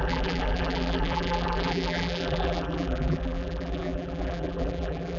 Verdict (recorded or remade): remade